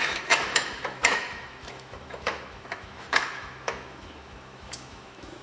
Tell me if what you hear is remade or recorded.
remade